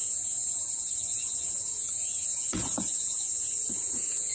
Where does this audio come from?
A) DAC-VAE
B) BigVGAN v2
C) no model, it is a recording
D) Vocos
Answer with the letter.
D